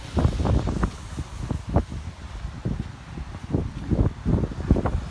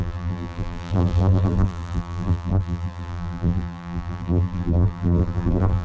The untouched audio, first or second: first